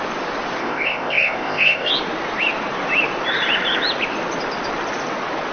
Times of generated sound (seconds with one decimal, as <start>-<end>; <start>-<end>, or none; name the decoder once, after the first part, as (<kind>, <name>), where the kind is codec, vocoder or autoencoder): 0.6-1.9 (codec, ZipCodec)